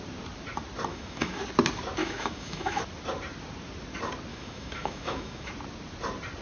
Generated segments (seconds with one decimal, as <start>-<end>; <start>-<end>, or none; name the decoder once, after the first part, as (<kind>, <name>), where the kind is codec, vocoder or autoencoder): 0.9-1.4 (autoencoder, DAC-VAE); 2.0-2.8; 4.3-5.5

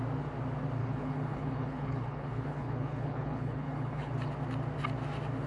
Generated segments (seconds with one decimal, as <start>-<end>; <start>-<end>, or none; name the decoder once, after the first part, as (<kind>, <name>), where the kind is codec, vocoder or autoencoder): 0.8-4.1 (codec, HILCodec)

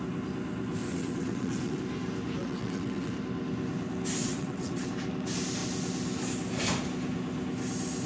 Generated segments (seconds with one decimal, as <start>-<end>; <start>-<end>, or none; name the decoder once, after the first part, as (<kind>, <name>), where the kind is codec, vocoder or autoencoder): 0.8-1.8 (vocoder, WaveNeXt); 2.4-3.1; 4.2-4.9

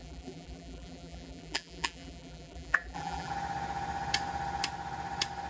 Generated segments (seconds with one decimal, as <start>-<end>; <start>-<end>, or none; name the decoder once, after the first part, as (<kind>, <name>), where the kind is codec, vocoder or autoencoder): 0.0-3.3 (vocoder, BigVGAN v2)